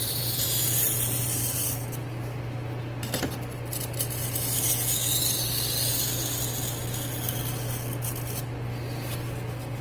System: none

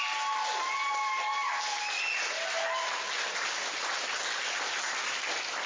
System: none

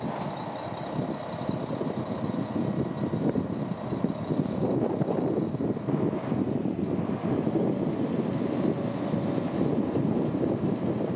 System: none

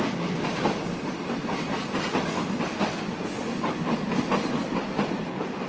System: none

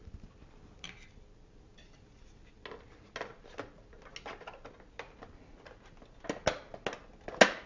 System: none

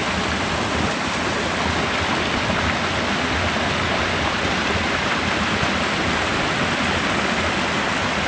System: none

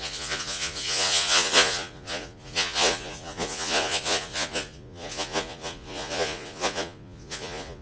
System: vocoder, Vocos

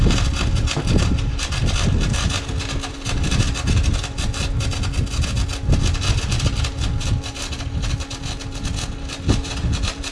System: none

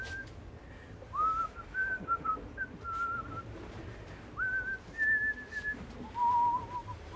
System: none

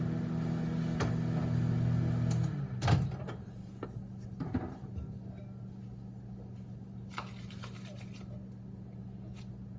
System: none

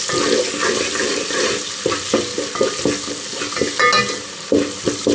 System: none